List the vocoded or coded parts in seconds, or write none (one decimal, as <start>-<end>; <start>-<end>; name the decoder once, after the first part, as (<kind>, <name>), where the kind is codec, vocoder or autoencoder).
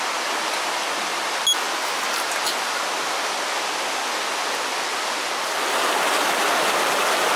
none